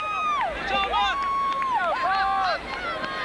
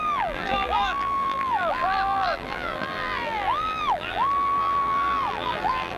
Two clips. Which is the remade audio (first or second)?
second